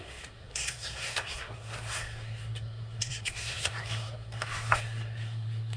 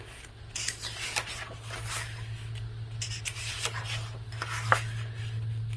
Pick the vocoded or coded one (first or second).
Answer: first